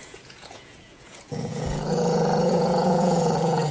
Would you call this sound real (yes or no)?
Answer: no